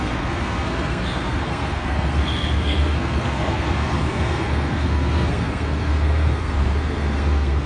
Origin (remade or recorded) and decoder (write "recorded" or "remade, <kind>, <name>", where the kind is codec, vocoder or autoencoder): remade, codec, SNAC